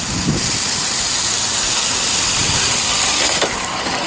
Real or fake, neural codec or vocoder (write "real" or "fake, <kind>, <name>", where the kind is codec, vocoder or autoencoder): real